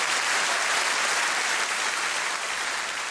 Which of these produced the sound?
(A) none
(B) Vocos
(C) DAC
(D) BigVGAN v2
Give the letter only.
D